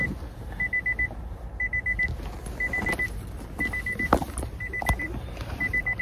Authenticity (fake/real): real